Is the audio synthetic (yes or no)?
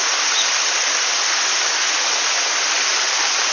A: no